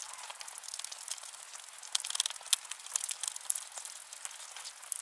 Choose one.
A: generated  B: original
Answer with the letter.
B